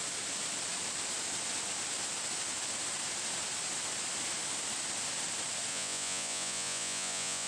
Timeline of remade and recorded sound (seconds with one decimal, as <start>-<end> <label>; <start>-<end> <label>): 0.0-5.7 recorded; 5.7-7.5 remade

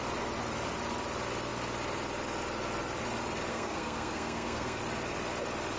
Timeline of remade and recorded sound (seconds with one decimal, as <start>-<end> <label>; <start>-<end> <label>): 0.0-3.5 recorded; 3.5-4.8 remade; 4.8-5.8 recorded

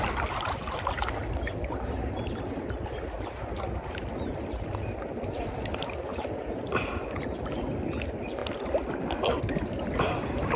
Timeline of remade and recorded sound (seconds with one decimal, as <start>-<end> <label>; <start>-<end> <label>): 0.0-10.6 recorded

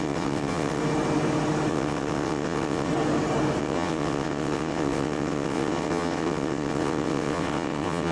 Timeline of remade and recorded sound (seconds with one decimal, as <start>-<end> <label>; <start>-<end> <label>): 0.0-0.8 remade; 0.8-1.7 recorded; 1.7-2.9 remade; 2.9-3.6 recorded; 3.6-8.1 remade

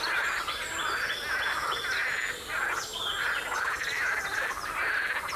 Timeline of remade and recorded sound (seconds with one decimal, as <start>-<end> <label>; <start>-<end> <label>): 0.0-5.4 recorded

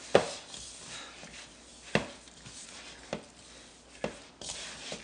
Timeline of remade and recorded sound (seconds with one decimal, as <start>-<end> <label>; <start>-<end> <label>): 0.0-5.0 recorded

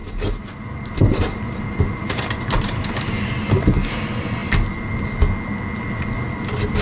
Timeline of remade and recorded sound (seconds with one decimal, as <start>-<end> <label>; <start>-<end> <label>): 0.0-0.6 remade; 0.6-1.0 recorded; 1.0-3.3 remade; 3.3-6.8 recorded

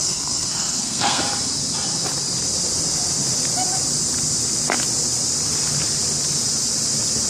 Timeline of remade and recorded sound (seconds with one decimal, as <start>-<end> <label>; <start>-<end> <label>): 0.0-1.2 remade; 1.2-7.3 recorded